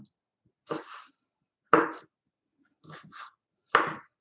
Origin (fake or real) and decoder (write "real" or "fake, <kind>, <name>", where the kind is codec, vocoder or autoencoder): real